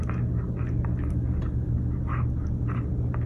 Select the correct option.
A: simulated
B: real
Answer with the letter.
B